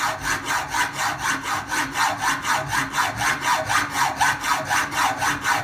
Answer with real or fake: real